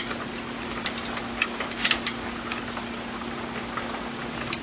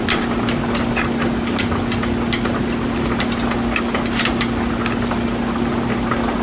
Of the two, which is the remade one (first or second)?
second